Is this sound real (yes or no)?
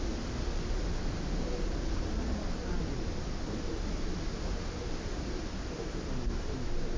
yes